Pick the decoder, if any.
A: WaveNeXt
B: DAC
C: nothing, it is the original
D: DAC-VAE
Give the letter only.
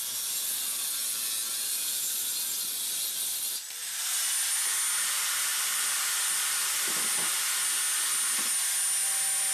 C